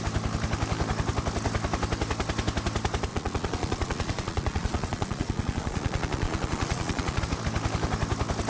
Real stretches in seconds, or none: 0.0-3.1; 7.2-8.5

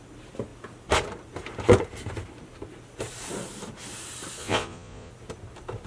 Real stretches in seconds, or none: 0.0-4.4; 5.1-5.9

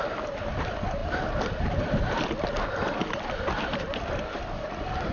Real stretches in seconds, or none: 0.0-5.1

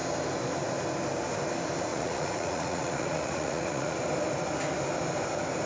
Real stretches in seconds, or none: 0.0-1.9; 4.0-5.7

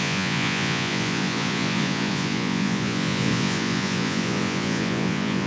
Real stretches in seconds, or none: none